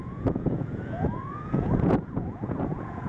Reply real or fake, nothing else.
fake